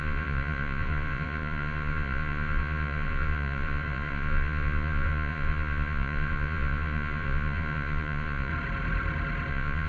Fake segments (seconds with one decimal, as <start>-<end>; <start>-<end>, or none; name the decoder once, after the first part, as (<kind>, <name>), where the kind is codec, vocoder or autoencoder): 0.0-8.5 (vocoder, Vocos); 9.5-9.9